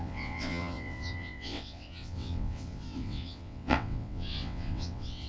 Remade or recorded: remade